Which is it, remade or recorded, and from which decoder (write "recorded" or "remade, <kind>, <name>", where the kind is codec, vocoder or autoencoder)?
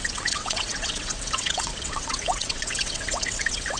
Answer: remade, vocoder, WaveNeXt